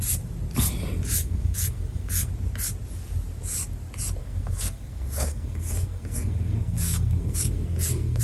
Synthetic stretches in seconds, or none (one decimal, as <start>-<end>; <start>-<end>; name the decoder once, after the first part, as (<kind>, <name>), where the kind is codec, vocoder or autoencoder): 1.2-2.3 (codec, SNAC); 4.2-8.2